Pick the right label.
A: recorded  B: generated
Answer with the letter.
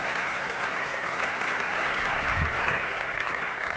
B